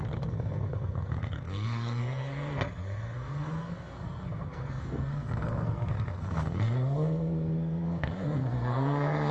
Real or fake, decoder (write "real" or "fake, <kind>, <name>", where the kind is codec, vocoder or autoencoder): fake, codec, SNAC